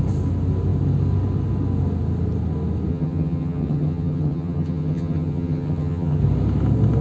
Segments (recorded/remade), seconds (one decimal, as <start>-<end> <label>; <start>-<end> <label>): 0.0-2.9 recorded; 2.9-6.2 remade; 6.2-7.0 recorded